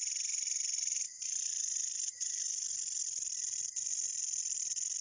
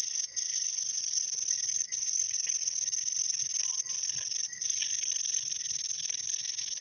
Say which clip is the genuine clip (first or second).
first